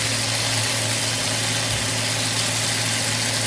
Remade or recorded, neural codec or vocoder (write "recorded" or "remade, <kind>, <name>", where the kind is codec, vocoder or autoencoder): recorded